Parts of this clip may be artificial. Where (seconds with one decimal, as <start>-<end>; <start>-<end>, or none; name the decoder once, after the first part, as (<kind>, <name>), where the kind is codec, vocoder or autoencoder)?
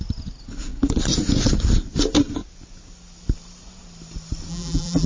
4.5-5.1 (vocoder, BigVGAN v2)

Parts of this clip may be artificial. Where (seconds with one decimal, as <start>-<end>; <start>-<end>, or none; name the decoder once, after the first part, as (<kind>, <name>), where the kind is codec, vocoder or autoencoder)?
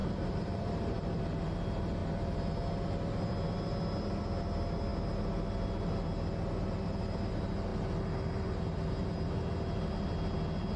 0.0-1.2 (vocoder, BigVGAN v2)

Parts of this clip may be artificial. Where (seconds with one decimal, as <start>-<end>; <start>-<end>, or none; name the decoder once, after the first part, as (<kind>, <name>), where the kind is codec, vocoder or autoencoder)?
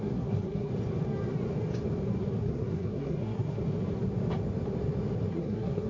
0.0-0.7 (codec, SNAC); 2.4-3.6; 5.3-5.9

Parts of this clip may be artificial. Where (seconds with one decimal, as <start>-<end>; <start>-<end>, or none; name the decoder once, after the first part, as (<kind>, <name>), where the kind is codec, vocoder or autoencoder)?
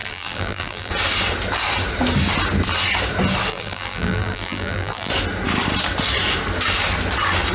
0.0-0.9 (vocoder, BigVGAN v2); 3.5-5.1